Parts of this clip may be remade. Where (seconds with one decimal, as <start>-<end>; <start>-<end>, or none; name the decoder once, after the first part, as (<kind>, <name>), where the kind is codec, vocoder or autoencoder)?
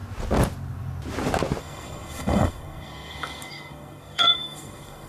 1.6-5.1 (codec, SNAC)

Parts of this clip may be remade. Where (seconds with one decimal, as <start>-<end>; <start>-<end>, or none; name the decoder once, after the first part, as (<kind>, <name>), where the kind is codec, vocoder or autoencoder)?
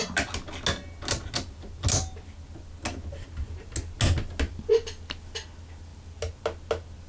none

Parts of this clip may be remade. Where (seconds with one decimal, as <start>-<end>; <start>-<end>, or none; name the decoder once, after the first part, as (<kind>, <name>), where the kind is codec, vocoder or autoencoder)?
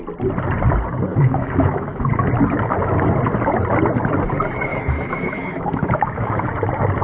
1.1-2.1 (autoencoder, DAC-VAE); 4.7-6.5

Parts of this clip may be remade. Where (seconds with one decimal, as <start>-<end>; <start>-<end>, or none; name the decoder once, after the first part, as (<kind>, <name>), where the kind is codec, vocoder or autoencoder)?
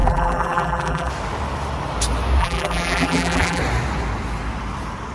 0.0-1.1 (vocoder, BigVGAN v2); 2.4-3.6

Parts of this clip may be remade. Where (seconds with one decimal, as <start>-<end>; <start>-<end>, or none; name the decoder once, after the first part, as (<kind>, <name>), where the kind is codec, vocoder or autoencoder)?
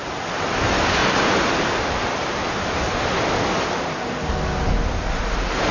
none